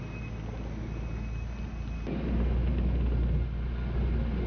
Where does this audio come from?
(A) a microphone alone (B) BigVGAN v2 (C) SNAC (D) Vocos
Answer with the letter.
A